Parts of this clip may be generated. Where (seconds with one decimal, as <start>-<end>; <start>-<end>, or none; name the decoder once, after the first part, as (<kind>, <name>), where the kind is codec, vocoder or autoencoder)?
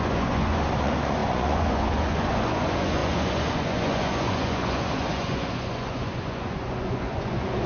0.0-7.7 (vocoder, Vocos)